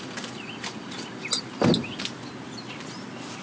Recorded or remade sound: recorded